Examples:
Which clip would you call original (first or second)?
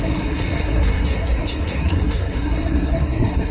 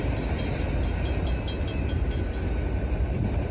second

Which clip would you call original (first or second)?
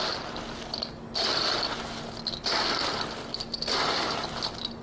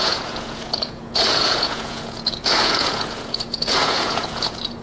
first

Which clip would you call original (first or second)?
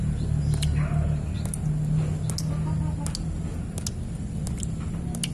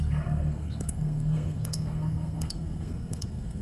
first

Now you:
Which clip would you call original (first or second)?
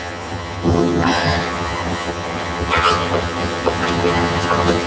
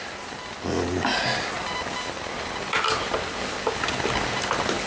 second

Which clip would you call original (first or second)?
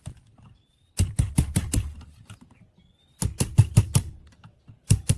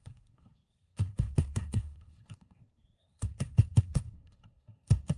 first